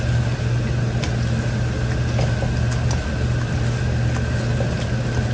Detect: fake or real real